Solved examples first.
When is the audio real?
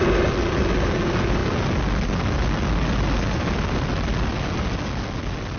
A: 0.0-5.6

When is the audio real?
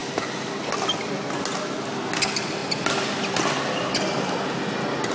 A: 0.0-5.1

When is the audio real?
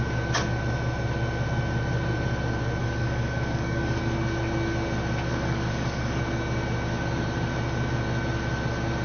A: 0.0-2.8; 4.0-5.3; 6.2-9.0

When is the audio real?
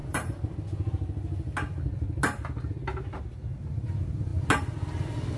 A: 0.0-5.4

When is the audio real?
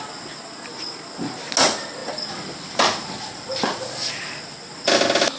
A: 0.0-5.4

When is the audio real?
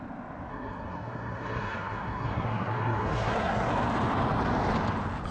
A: 0.0-0.5; 3.7-5.3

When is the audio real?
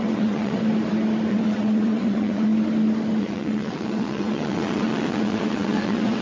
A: 0.6-1.3; 2.5-3.2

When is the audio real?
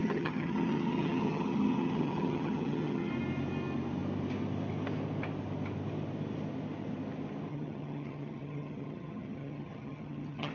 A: 3.1-7.5